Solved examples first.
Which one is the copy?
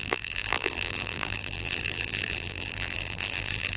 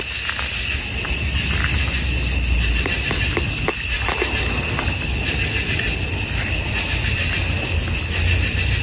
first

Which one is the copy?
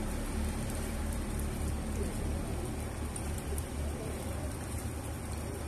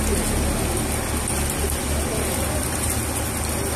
first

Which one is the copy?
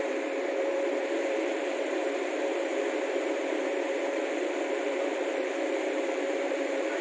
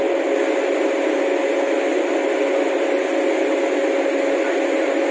first